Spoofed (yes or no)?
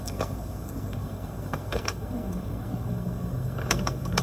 yes